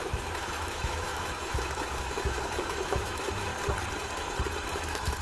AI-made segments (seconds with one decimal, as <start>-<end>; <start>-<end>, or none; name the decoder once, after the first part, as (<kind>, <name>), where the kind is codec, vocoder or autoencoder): 0.0-3.5 (autoencoder, DAC-VAE); 4.7-5.2